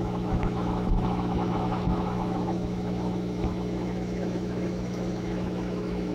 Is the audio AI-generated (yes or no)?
yes